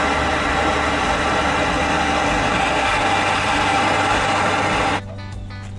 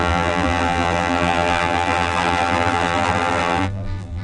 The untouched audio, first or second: first